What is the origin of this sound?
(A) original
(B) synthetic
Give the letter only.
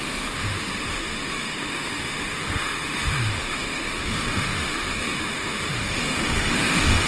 B